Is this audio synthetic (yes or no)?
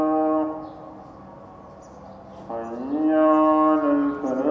no